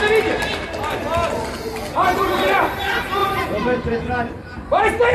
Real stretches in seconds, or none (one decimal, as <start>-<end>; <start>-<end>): 0.0-0.5; 1.0-3.2